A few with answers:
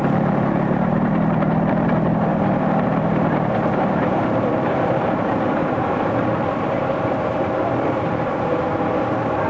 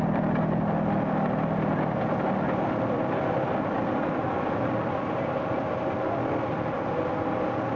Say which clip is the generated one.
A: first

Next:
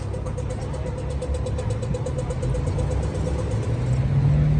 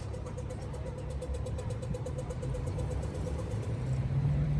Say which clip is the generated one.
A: second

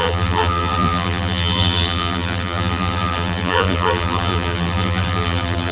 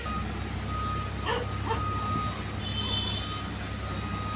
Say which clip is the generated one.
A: first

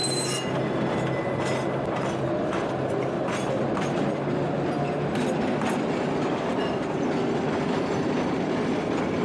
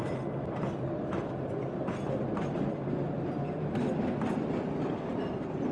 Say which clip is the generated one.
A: second